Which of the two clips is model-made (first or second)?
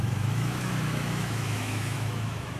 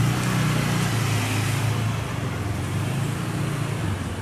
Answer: first